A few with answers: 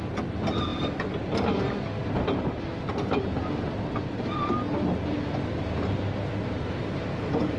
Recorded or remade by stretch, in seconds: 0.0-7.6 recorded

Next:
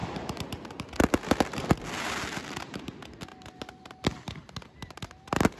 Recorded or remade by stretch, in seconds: 0.0-5.6 recorded

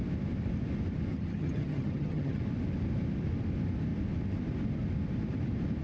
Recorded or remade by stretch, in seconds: 0.0-1.1 recorded; 1.1-2.4 remade; 2.4-5.8 recorded